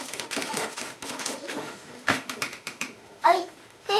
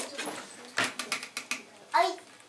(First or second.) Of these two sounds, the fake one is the first